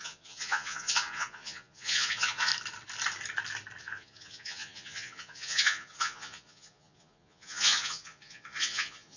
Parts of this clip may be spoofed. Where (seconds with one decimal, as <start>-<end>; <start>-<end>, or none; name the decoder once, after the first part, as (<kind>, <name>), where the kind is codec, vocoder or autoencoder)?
0.0-2.5 (vocoder, Vocos); 3.8-9.2